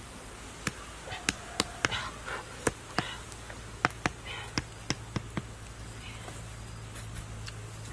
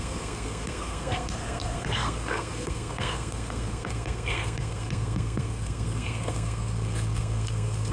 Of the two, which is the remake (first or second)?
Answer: second